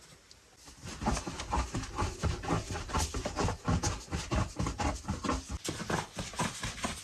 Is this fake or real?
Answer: real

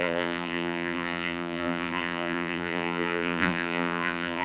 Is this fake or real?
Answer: fake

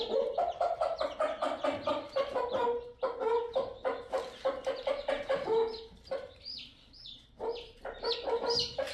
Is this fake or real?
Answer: real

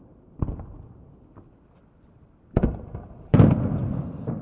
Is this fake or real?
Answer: fake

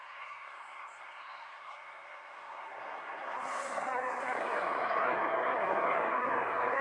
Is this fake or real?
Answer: fake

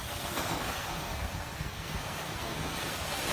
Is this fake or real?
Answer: fake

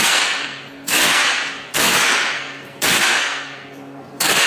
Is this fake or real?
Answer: fake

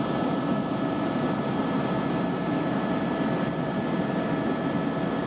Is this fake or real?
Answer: real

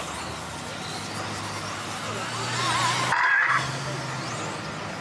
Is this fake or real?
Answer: real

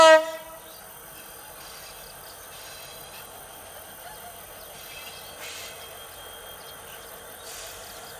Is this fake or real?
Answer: real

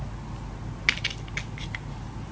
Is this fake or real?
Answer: real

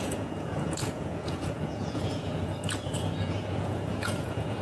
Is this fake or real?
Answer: fake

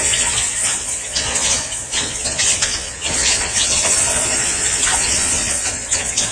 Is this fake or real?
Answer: fake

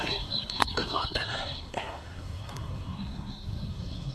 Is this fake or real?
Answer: fake